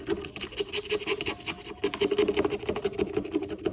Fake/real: real